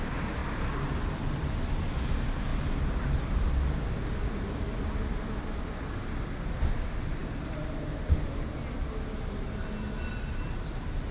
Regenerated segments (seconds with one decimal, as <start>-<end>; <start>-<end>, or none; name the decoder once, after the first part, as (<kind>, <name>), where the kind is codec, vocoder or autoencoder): 0.4-1.9 (vocoder, BigVGAN v2); 2.5-3.4; 7.2-7.9